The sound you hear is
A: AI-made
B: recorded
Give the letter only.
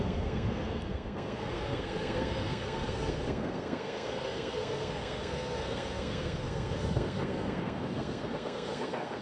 A